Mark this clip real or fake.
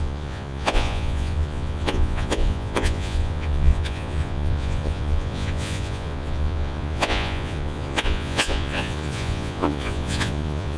fake